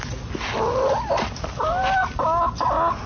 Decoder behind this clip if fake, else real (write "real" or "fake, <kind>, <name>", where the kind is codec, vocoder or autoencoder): real